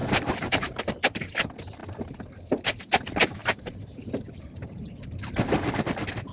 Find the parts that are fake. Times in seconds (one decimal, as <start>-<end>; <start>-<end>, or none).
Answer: 0.0-0.8; 3.4-4.9